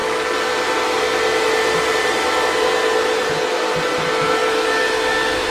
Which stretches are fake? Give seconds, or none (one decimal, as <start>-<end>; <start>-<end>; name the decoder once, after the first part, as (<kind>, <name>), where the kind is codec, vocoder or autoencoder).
none